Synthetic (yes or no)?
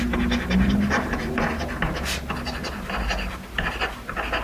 no